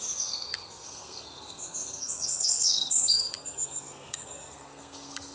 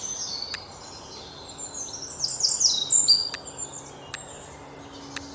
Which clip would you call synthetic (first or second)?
first